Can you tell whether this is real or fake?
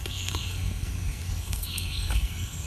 fake